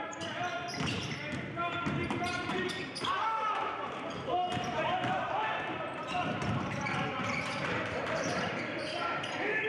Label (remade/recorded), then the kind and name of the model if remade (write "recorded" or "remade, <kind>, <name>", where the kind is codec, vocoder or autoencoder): remade, vocoder, BigVGAN v2